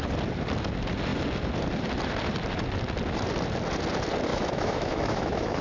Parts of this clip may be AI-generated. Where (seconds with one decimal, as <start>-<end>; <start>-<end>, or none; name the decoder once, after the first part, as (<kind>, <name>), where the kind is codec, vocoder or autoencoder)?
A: 4.3-5.6 (autoencoder, DAC-VAE)